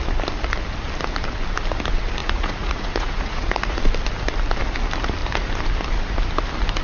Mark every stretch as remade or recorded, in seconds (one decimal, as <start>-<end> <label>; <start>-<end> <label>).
0.0-2.2 recorded; 2.2-3.8 remade; 3.8-6.8 recorded

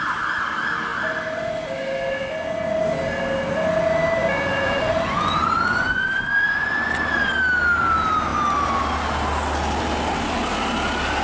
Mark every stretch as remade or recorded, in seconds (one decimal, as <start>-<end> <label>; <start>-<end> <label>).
0.0-4.2 recorded; 4.2-7.3 remade; 7.3-11.2 recorded

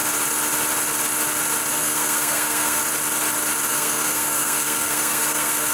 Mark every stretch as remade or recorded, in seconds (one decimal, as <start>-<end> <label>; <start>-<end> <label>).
0.0-1.7 recorded; 1.7-2.8 remade; 2.8-3.7 recorded; 3.7-5.7 remade

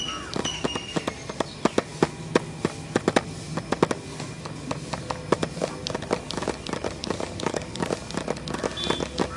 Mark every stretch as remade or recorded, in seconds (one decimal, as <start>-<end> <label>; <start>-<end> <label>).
0.0-7.0 recorded; 7.0-7.9 remade; 7.9-9.4 recorded

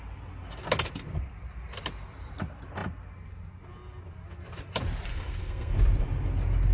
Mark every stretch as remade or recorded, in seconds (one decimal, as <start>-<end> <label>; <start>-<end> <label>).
0.0-5.1 recorded; 5.1-5.7 remade; 5.7-6.7 recorded

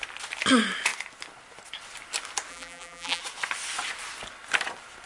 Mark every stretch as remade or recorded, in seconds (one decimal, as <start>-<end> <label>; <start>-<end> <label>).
0.0-2.5 recorded; 2.5-3.2 remade; 3.2-5.1 recorded

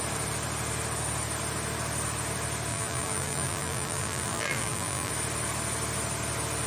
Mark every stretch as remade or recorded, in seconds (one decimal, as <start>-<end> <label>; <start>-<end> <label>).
0.0-2.7 recorded; 2.7-5.1 remade; 5.1-6.7 recorded